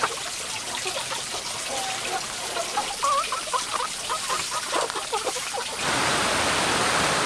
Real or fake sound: real